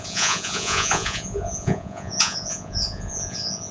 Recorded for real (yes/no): no